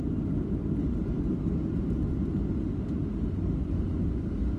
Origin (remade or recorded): recorded